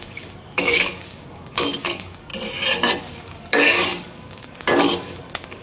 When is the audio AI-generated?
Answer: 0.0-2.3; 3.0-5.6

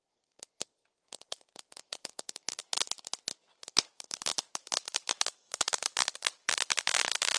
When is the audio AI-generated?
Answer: 0.0-2.6; 3.4-7.4

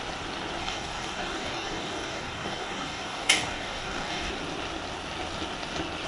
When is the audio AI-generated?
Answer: 0.6-4.3

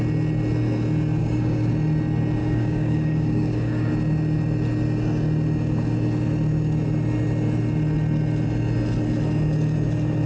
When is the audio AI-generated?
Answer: 1.2-1.7; 2.4-3.9

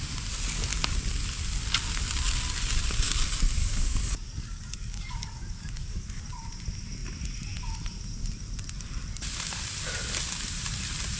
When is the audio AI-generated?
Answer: 3.6-6.2